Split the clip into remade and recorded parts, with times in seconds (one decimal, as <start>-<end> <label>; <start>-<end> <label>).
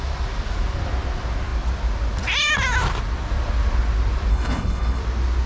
0.0-4.3 recorded; 4.3-5.0 remade; 5.0-5.5 recorded